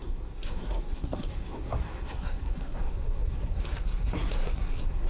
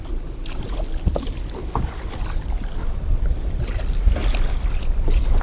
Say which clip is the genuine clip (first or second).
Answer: second